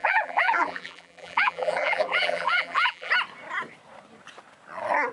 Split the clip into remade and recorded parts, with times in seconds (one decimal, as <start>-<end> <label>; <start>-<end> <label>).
0.0-3.1 remade; 3.1-5.1 recorded